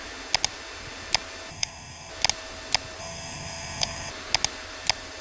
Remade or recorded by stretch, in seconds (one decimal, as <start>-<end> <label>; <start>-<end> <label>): 0.0-1.5 recorded; 1.5-2.1 remade; 2.1-3.0 recorded; 3.0-4.1 remade; 4.1-5.2 recorded